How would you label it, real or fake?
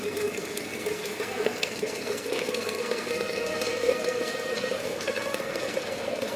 fake